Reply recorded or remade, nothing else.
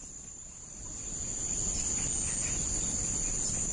recorded